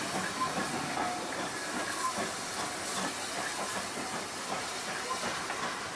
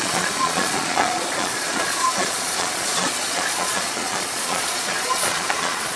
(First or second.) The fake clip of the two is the second